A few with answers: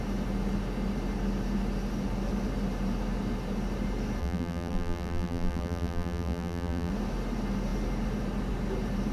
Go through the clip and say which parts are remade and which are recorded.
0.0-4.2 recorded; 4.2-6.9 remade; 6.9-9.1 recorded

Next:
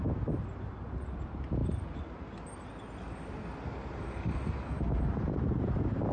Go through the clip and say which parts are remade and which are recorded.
0.0-6.1 recorded

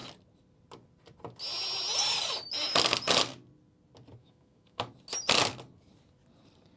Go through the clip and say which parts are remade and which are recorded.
0.0-4.2 recorded; 4.2-4.9 remade; 4.9-6.8 recorded

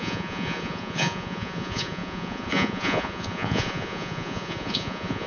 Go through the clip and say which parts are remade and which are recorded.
0.0-5.3 remade

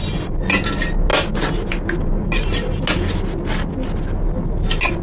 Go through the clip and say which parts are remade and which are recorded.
0.0-5.0 recorded